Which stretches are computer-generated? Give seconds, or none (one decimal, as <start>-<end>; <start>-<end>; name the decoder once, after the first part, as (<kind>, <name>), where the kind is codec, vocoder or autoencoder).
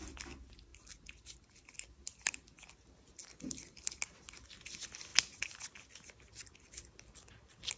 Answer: none